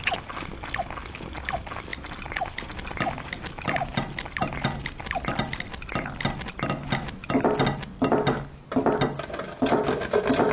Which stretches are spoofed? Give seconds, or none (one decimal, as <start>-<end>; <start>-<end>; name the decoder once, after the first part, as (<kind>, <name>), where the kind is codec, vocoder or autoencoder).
none